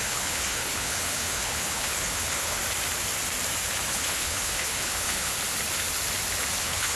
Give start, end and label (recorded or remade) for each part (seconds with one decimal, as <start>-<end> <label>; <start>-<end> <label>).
0.0-2.6 remade; 2.6-3.9 recorded; 3.9-5.3 remade; 5.3-6.6 recorded; 6.6-7.0 remade